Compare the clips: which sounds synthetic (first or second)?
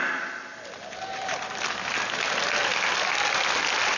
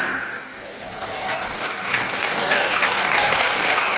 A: second